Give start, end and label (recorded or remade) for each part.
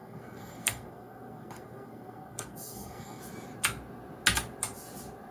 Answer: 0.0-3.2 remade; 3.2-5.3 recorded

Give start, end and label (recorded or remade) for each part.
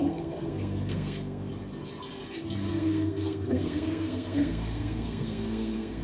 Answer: 0.0-1.5 remade; 1.5-2.7 recorded; 2.7-6.0 remade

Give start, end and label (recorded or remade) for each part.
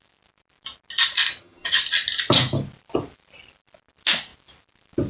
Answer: 0.0-1.3 recorded; 1.3-1.8 remade; 1.8-5.1 recorded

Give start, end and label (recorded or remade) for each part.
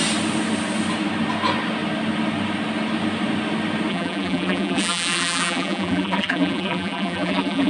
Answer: 0.0-3.9 recorded; 3.9-7.7 remade